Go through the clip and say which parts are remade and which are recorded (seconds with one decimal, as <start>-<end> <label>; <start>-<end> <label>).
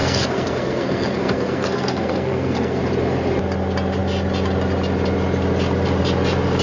0.0-2.8 remade; 2.8-6.6 recorded